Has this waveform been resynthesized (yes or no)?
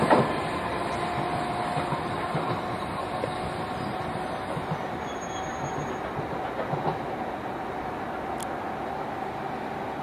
no